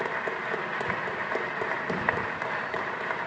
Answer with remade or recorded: recorded